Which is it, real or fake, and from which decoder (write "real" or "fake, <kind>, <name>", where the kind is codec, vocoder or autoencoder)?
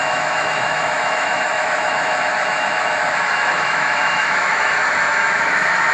fake, autoencoder, DAC-VAE